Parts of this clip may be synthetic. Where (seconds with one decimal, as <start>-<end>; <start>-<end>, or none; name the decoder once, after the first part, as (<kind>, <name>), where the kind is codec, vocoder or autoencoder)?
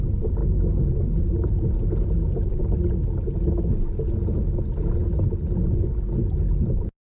none